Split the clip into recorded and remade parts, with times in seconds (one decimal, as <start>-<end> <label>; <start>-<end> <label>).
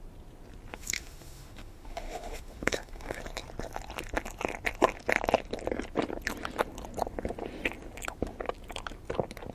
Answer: 0.0-0.7 recorded; 0.7-3.2 remade; 3.2-9.5 recorded